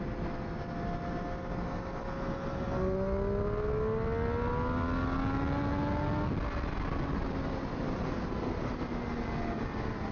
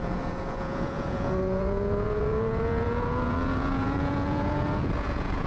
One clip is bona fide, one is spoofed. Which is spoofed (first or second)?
second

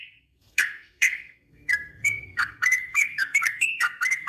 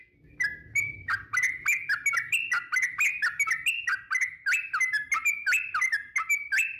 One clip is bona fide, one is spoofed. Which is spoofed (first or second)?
first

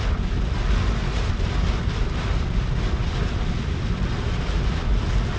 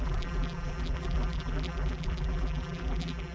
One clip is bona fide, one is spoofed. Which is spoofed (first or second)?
second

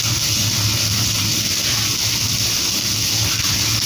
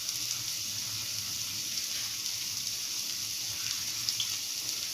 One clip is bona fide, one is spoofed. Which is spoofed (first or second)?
second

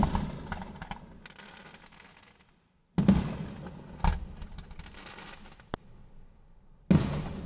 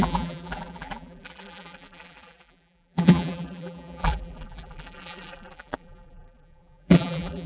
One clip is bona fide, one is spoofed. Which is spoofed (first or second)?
second